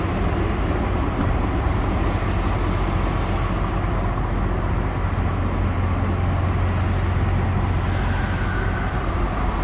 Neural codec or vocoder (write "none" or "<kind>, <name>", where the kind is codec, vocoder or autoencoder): none